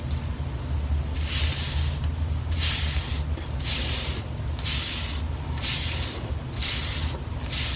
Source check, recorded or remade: recorded